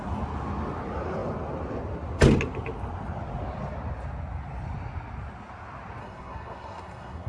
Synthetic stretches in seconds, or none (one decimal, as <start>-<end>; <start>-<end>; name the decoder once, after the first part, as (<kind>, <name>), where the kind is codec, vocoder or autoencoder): 6.0-7.3 (codec, SNAC)